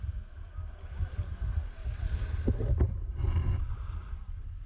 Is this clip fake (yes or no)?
no